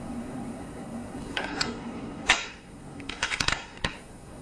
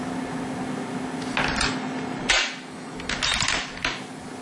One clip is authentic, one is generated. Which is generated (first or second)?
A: first